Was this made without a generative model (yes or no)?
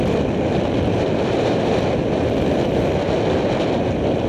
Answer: yes